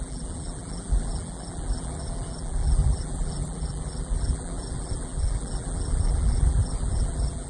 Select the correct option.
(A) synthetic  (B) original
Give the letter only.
A